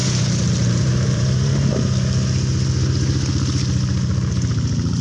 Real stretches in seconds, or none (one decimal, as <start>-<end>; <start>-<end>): 1.5-5.0

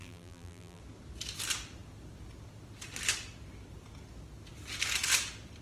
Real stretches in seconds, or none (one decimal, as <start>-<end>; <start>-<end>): 0.8-5.6

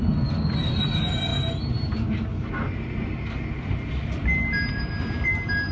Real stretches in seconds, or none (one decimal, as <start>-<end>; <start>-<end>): 1.3-4.7

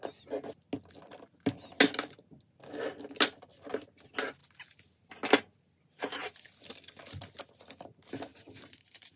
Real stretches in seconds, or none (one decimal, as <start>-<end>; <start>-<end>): 0.0-8.3